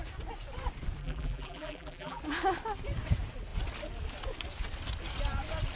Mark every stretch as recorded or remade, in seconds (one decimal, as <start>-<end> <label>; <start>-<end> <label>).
0.0-1.0 recorded; 1.0-2.2 remade; 2.2-5.7 recorded

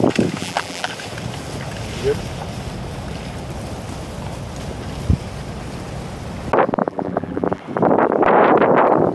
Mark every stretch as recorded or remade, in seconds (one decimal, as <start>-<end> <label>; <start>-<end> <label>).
0.0-0.4 recorded; 0.4-0.9 remade; 0.9-6.8 recorded; 6.8-7.6 remade; 7.6-9.1 recorded

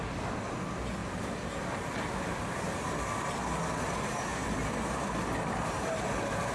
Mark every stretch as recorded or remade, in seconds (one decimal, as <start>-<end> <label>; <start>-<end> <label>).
0.0-1.0 recorded; 1.0-2.6 remade; 2.6-6.5 recorded

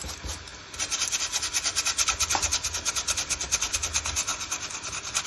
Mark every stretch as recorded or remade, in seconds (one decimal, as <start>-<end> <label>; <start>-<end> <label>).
0.0-0.5 recorded; 0.5-3.7 remade; 3.7-4.3 recorded; 4.3-5.3 remade

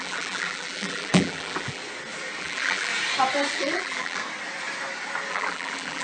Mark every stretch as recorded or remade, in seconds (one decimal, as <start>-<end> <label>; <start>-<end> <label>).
0.0-1.8 remade; 1.8-2.4 recorded; 2.4-2.9 remade; 2.9-3.5 recorded; 3.5-4.2 remade; 4.2-5.3 recorded; 5.3-6.0 remade